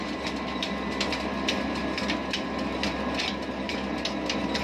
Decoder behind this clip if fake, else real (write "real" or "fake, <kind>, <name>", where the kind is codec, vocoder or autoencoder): real